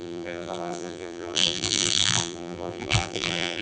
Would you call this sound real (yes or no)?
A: no